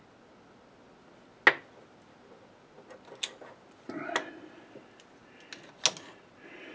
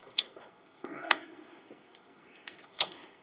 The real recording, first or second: first